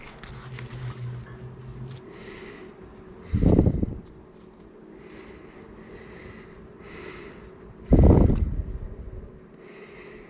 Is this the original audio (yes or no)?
yes